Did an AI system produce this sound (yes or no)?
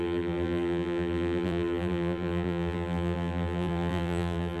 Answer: yes